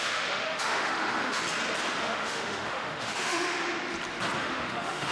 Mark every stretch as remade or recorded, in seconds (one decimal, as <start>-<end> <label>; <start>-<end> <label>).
0.0-1.4 remade; 1.4-2.0 recorded; 2.0-3.6 remade; 3.6-4.4 recorded; 4.4-5.1 remade

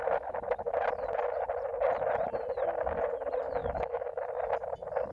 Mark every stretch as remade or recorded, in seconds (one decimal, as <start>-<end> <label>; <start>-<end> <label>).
0.0-3.6 recorded; 3.6-4.2 remade; 4.2-5.1 recorded

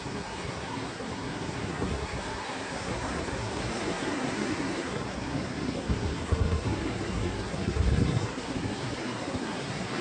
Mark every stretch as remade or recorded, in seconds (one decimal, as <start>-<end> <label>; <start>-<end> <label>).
0.0-10.0 remade

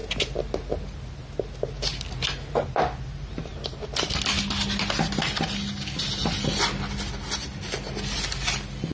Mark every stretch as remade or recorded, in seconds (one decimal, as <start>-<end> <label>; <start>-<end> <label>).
0.0-8.9 recorded

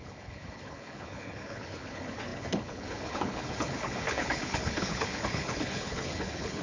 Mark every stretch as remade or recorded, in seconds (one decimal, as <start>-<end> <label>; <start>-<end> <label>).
0.0-6.6 remade

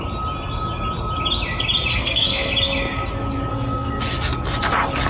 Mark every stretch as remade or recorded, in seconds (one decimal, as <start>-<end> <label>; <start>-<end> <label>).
0.0-1.9 recorded; 1.9-2.5 remade; 2.5-3.5 recorded; 3.5-4.0 remade; 4.0-5.1 recorded

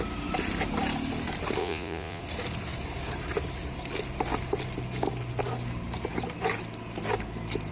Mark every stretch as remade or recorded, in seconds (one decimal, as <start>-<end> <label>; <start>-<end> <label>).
0.0-1.6 recorded; 1.6-2.2 remade; 2.2-7.7 recorded